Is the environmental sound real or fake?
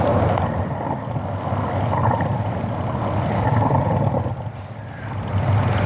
real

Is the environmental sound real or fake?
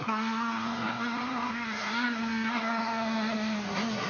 fake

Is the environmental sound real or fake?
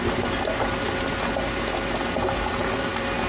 real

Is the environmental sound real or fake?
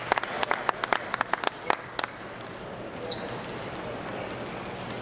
real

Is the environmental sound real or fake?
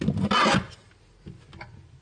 real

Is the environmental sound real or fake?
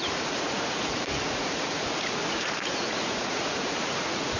fake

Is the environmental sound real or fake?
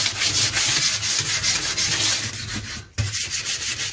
real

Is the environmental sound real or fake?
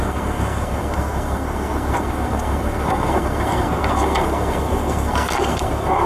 fake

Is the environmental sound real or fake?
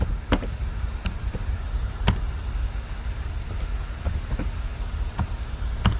fake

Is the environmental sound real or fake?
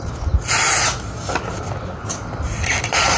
real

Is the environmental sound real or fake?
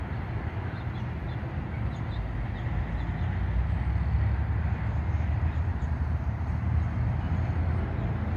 real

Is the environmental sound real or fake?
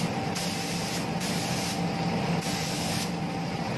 real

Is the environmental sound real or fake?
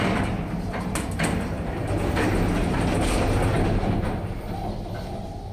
real